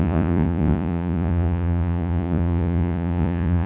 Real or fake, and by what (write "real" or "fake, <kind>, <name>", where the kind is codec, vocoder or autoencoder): fake, vocoder, Vocos